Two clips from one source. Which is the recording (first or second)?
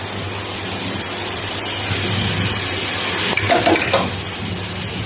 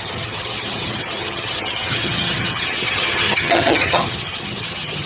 first